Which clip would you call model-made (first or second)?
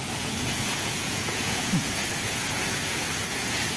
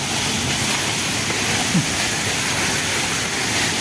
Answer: first